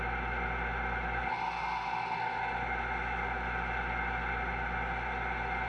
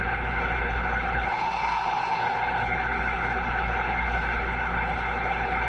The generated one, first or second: second